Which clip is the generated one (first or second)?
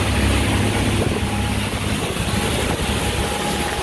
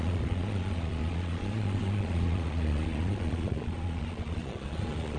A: second